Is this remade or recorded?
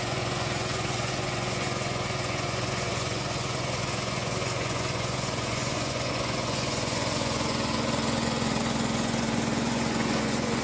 remade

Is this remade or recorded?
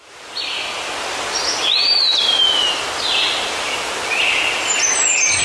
recorded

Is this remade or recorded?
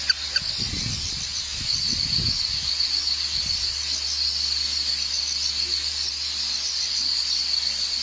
recorded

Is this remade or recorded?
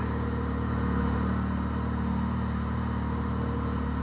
recorded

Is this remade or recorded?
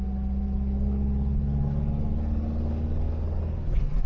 recorded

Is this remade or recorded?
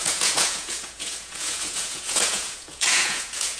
remade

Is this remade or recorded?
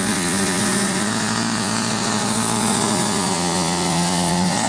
remade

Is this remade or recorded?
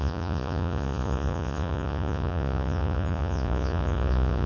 remade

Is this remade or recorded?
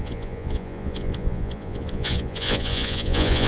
remade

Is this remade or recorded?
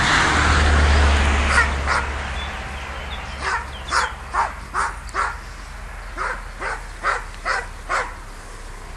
recorded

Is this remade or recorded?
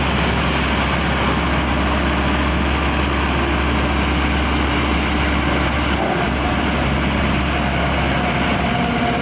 recorded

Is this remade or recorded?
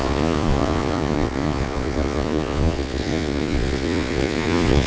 remade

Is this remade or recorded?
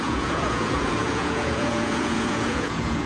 remade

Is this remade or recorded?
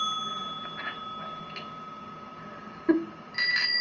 recorded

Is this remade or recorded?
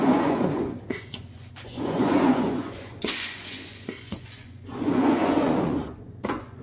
remade